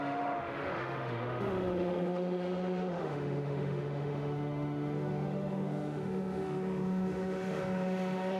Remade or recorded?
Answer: remade